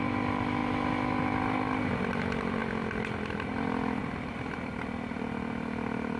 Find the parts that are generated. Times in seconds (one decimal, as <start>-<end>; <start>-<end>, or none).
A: none